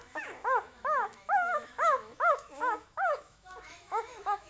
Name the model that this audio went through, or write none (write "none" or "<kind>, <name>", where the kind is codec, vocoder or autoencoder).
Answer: autoencoder, DAC-VAE